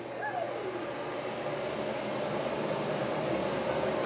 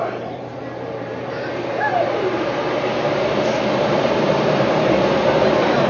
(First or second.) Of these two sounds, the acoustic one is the first